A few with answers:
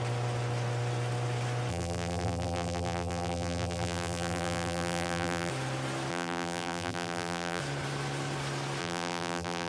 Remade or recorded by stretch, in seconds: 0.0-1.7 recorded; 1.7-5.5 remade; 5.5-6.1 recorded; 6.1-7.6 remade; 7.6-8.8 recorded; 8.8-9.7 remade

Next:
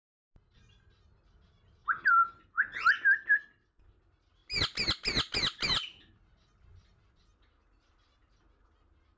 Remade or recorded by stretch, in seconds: 0.0-1.8 recorded; 1.8-2.4 remade; 2.4-9.2 recorded

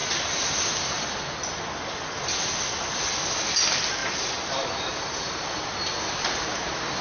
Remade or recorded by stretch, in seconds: 0.0-4.0 recorded; 4.0-5.3 remade; 5.3-7.0 recorded

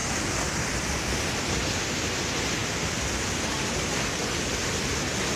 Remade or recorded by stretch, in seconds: 0.0-1.8 remade; 1.8-2.6 recorded; 2.6-4.5 remade; 4.5-5.4 recorded

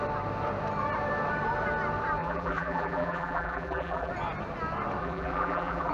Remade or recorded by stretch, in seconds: 0.0-2.2 recorded; 2.2-4.1 remade; 4.1-5.0 recorded; 5.0-5.9 remade

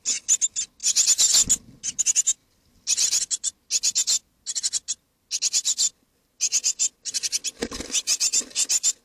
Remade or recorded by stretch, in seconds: 0.0-2.4 recorded; 2.4-3.2 remade; 3.2-3.8 recorded; 3.8-9.0 remade

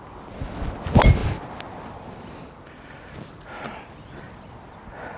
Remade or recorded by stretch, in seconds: 0.0-5.2 recorded